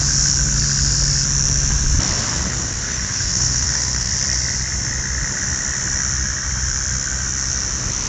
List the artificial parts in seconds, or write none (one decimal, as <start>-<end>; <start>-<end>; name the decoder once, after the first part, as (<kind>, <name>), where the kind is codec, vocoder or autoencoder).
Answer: 2.3-4.1 (codec, SNAC)